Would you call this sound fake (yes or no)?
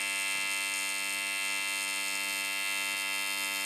no